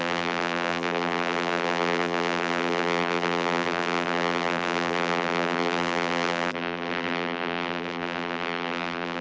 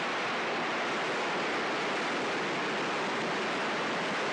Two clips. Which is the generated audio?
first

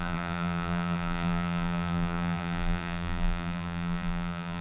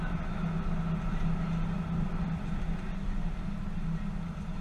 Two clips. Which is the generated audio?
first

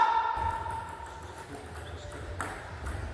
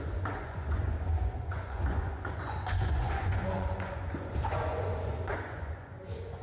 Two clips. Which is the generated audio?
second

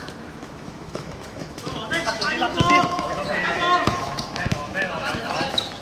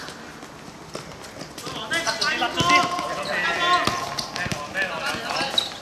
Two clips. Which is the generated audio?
first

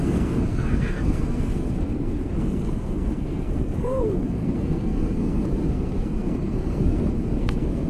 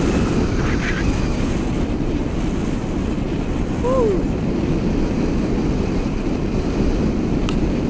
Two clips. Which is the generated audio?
first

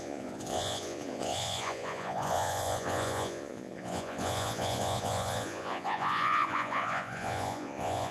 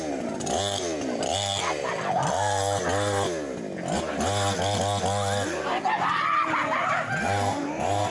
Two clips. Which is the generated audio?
first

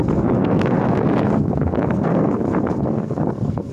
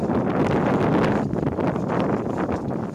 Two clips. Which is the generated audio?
first